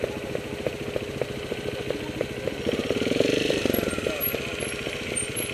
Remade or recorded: recorded